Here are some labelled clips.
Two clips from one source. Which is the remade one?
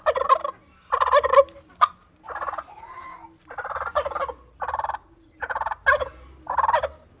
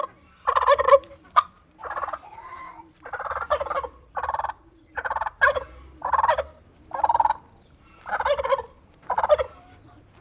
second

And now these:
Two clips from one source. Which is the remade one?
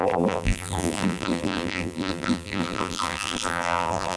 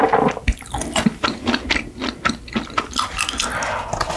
first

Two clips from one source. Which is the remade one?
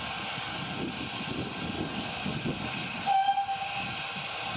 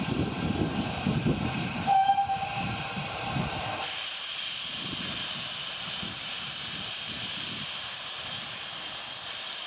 second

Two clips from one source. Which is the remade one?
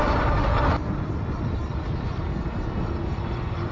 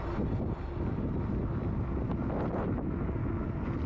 first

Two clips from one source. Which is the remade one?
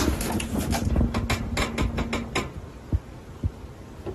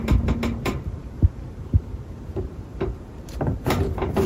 second